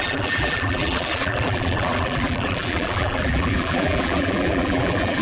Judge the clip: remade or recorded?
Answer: remade